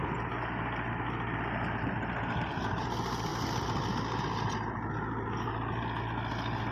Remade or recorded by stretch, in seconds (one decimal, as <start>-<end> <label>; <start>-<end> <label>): 0.0-6.7 recorded